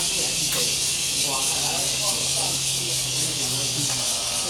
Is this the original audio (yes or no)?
no